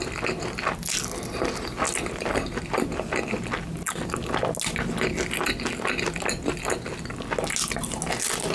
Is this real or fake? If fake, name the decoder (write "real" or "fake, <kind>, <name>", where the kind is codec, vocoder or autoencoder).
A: real